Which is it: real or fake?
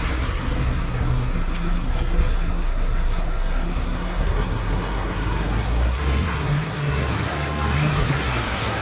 fake